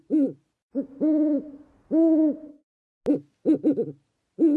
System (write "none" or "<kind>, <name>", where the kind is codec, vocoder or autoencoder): none